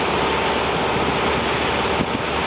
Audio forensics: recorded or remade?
recorded